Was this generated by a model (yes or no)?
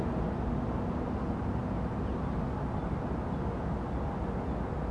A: no